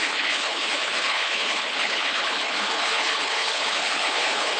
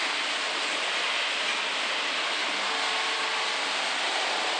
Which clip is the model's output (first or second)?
first